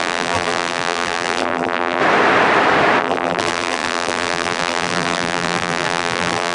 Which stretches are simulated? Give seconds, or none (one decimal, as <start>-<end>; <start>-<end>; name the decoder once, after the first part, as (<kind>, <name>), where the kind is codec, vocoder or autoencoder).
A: 0.0-2.0 (vocoder, BigVGAN v2); 3.0-6.5

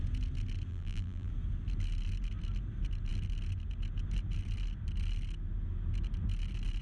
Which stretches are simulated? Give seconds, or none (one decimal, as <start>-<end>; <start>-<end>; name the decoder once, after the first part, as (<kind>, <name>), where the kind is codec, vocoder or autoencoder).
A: 0.7-1.3 (vocoder, BigVGAN v2)

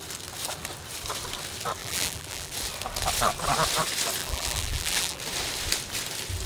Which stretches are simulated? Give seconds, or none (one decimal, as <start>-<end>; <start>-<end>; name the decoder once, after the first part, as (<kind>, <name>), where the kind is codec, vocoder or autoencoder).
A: 1.8-2.5 (vocoder, BigVGAN v2); 4.2-5.2

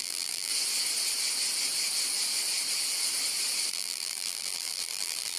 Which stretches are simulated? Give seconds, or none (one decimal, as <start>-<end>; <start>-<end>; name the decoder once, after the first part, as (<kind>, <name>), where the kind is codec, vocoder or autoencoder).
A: 0.0-0.5 (vocoder, BigVGAN v2); 3.7-5.4